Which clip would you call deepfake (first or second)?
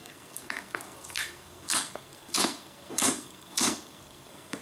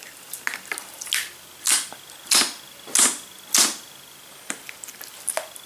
first